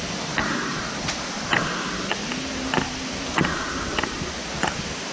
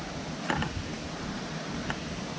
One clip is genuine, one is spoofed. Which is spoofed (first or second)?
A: second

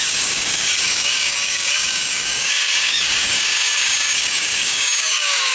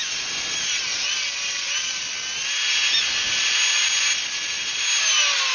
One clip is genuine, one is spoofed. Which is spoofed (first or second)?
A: first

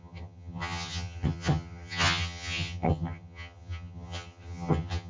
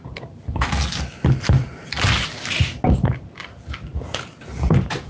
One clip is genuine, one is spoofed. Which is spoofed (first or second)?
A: first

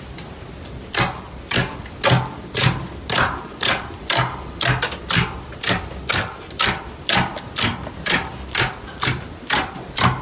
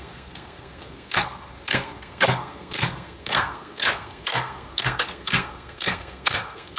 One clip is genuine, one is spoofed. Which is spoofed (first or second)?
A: second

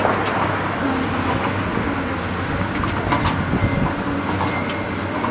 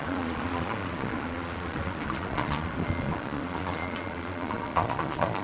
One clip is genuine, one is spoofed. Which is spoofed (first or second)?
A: second